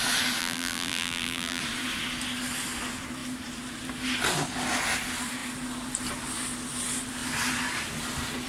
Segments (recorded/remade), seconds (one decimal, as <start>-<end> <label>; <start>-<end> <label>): 0.0-0.4 recorded; 0.4-1.6 remade; 1.6-8.5 recorded